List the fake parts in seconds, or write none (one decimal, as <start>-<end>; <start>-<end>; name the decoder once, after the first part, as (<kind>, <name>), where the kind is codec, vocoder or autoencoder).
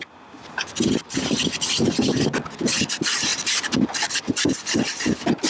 none